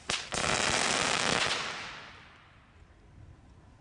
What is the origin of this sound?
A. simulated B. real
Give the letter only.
B